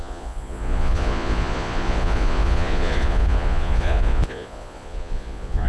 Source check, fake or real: fake